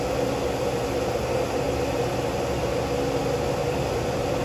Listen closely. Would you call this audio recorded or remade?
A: recorded